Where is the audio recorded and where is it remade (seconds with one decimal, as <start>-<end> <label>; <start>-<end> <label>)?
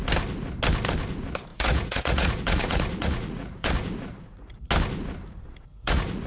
0.0-1.5 recorded; 1.5-4.7 remade; 4.7-5.7 recorded; 5.7-6.3 remade